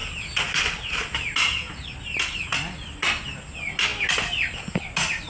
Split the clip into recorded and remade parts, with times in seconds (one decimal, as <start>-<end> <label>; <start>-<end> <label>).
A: 0.0-5.3 recorded